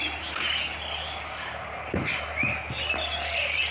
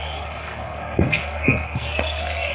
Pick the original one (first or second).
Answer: first